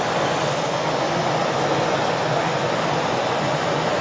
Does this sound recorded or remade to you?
remade